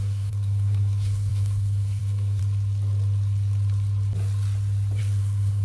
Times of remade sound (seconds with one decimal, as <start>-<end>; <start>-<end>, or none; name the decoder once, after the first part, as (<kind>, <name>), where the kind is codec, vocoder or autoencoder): 0.0-2.4 (codec, SNAC); 5.0-5.6